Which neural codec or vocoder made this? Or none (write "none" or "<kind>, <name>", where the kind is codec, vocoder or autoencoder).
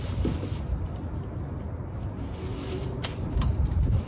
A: vocoder, BigVGAN v2